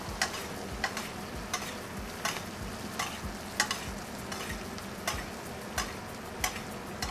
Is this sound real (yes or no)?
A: yes